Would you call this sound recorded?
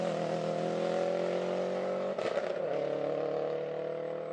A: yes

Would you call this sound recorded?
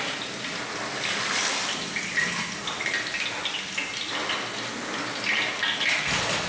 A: yes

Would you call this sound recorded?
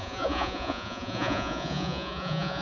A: no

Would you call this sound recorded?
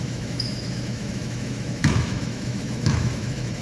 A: no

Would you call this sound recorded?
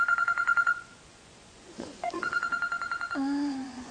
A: no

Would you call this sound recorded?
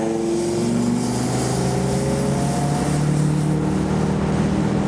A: yes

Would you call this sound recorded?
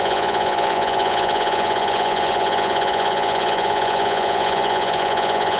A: no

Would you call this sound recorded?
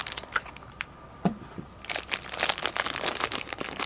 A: yes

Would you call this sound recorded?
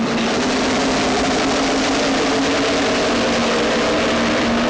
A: yes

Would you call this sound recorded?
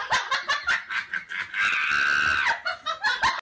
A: yes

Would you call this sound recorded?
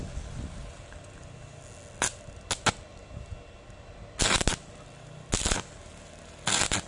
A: yes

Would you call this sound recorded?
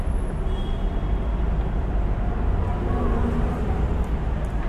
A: yes